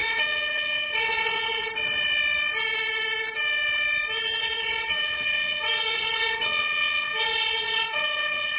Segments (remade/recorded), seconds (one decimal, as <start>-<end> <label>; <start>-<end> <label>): 0.0-1.7 remade; 1.7-4.4 recorded; 4.4-8.6 remade